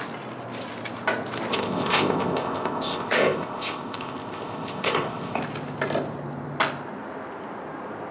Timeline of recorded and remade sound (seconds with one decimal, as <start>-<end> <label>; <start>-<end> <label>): 0.0-1.5 recorded; 1.5-5.4 remade; 5.4-8.1 recorded